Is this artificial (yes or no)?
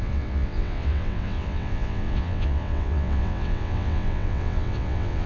yes